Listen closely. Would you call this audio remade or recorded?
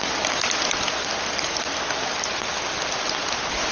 recorded